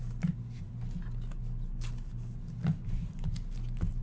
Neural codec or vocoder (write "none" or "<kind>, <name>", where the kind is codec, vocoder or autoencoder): none